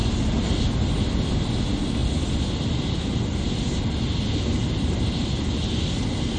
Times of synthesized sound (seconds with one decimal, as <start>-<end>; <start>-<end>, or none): none